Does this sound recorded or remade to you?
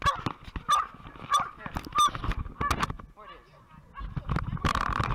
recorded